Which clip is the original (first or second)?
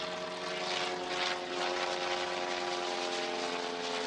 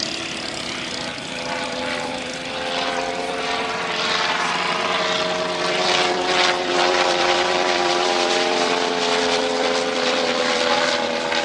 first